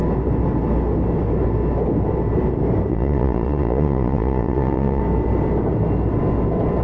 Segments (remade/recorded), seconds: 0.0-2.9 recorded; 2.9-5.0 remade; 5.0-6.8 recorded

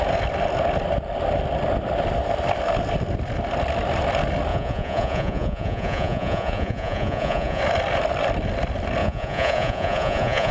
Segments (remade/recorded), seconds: 0.0-4.5 recorded; 4.5-7.6 remade; 7.6-9.0 recorded; 9.0-10.5 remade